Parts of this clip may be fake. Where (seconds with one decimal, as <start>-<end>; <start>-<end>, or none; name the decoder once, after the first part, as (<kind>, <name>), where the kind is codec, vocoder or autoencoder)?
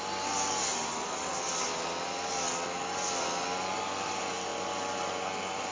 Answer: none